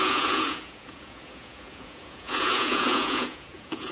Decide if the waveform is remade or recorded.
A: remade